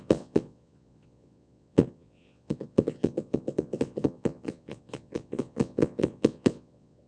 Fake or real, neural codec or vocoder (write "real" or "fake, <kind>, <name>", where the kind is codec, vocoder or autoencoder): fake, vocoder, Vocos